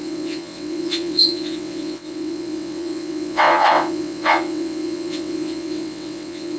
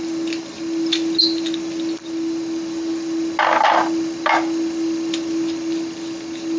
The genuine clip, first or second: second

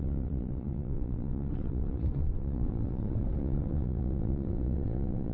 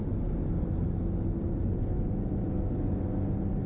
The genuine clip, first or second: second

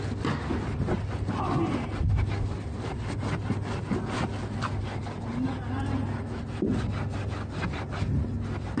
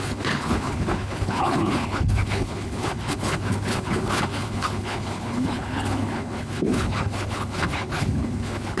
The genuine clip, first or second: first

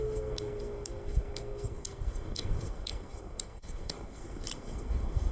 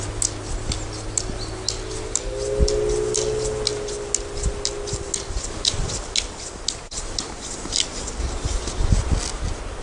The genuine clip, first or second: second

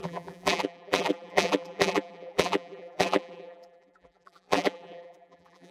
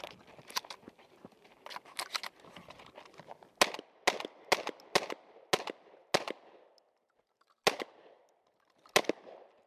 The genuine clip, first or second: second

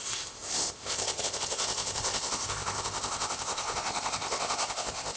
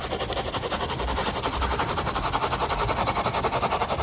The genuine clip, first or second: second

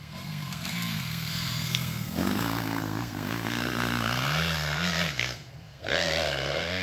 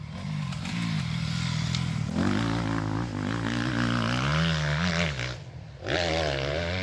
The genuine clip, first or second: second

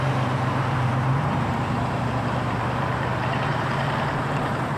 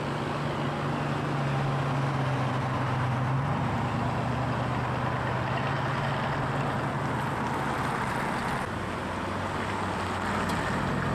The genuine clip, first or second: second